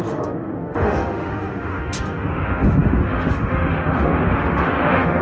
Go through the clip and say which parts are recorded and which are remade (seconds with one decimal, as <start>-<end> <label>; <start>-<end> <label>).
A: 0.0-5.2 remade